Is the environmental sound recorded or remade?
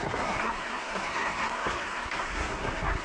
remade